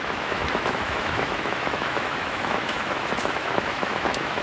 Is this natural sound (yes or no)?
no